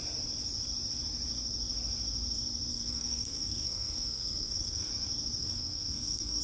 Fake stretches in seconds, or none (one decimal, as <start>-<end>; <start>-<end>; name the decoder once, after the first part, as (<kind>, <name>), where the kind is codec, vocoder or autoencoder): 2.7-4.9 (codec, SNAC); 5.4-6.4